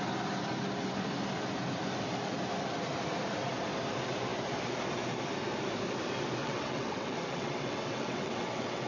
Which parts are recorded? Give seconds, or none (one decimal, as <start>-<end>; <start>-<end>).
0.0-6.4